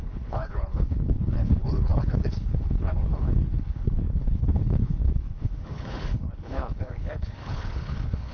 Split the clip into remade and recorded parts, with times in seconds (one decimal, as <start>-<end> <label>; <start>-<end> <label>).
0.0-8.3 remade